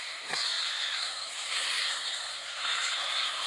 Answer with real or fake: fake